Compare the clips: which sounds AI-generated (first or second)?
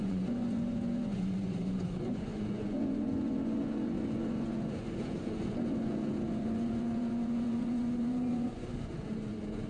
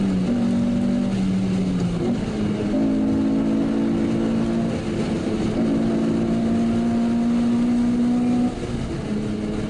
first